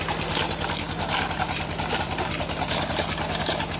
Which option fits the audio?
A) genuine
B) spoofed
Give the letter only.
A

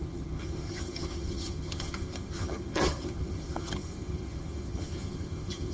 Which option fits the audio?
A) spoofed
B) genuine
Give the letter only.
A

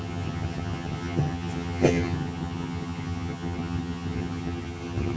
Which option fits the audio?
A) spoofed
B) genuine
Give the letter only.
A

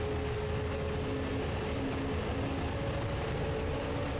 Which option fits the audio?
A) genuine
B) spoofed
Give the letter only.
A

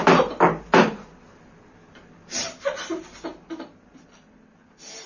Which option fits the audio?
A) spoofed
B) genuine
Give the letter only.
B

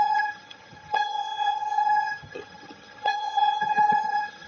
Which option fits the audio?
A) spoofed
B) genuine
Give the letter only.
A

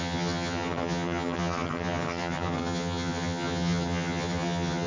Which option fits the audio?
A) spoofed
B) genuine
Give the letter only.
A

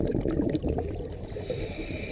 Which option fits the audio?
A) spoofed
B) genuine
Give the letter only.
B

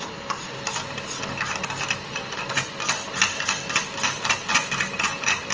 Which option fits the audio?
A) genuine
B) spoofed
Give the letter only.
A